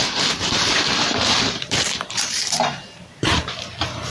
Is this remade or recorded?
remade